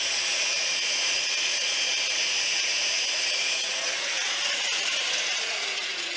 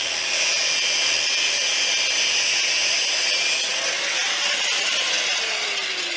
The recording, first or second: second